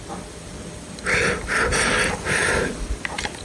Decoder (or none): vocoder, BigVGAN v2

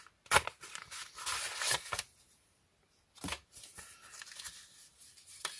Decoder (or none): none